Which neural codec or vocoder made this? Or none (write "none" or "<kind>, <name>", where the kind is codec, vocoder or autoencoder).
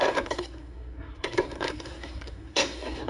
codec, SNAC